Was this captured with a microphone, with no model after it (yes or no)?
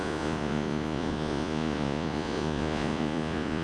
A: no